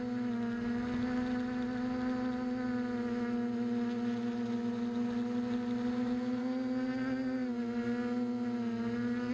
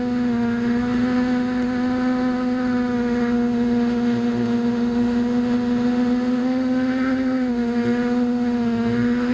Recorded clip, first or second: first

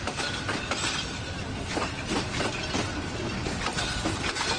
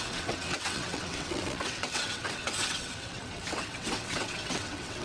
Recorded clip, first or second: first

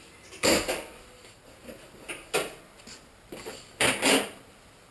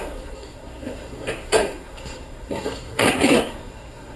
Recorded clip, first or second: first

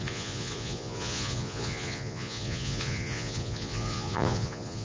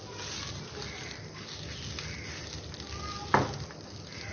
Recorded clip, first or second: second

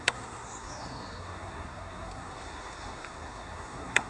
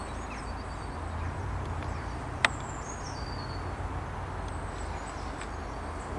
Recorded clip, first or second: second